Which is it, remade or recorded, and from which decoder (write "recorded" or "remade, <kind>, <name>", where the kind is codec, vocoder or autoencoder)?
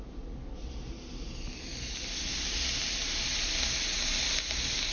recorded